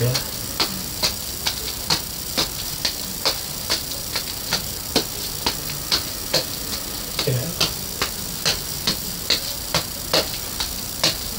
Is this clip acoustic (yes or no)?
yes